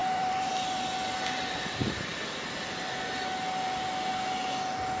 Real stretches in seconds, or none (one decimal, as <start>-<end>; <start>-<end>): 0.5-5.0